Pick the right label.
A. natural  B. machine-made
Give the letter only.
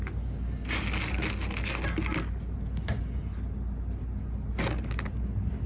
A